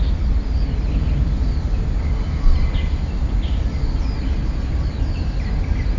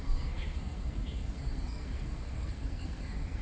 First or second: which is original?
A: first